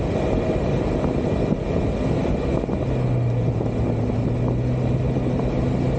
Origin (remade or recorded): recorded